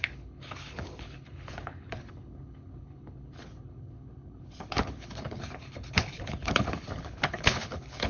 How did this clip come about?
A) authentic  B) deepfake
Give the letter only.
B